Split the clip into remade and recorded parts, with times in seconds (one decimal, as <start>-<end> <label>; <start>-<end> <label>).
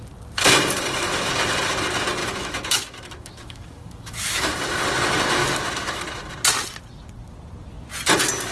0.0-2.2 recorded; 2.2-4.5 remade; 4.5-5.4 recorded; 5.4-6.0 remade; 6.0-8.5 recorded